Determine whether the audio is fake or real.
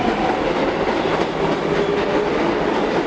real